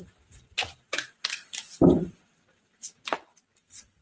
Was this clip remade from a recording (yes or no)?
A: no